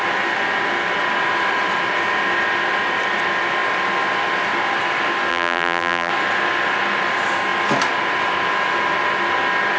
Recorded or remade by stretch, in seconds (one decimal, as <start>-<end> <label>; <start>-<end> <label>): 0.0-5.3 recorded; 5.3-6.1 remade; 6.1-9.8 recorded